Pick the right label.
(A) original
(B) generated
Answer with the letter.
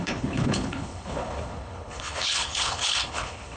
B